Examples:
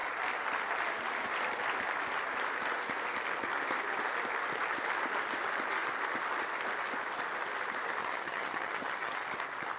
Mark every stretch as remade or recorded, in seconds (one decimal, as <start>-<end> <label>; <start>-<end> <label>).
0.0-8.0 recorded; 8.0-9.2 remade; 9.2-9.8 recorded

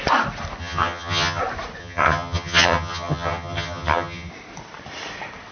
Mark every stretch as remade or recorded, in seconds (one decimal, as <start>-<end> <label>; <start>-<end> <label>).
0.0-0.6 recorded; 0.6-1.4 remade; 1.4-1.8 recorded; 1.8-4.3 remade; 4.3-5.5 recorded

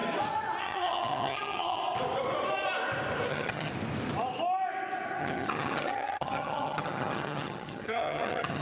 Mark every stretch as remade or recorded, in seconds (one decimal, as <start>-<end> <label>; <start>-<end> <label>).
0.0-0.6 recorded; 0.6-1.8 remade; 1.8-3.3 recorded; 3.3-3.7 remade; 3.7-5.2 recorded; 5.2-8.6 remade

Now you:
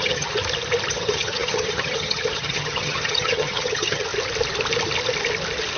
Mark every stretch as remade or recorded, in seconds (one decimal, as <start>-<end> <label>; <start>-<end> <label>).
0.0-0.4 remade; 0.4-0.9 recorded; 0.9-4.1 remade; 4.1-5.8 recorded